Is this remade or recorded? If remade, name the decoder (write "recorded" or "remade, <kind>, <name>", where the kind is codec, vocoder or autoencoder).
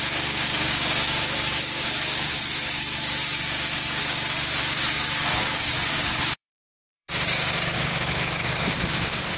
remade, codec, DAC